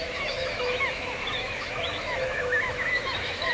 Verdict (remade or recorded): remade